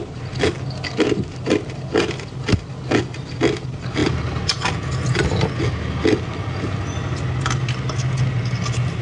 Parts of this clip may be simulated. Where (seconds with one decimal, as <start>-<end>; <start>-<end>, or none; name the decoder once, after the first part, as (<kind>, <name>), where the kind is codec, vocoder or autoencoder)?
none